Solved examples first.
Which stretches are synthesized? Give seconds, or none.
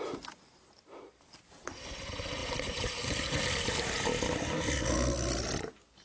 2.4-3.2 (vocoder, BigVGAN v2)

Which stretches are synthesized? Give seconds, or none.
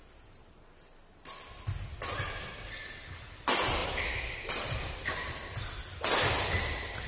2.8-3.4 (vocoder, BigVGAN v2); 3.8-4.9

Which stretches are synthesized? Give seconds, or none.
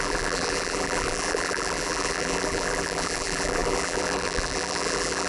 0.0-5.3 (vocoder, BigVGAN v2)